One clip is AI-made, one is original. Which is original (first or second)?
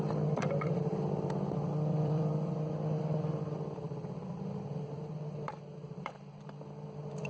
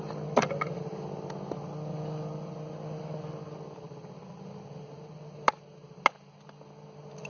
second